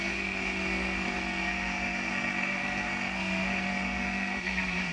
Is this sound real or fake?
fake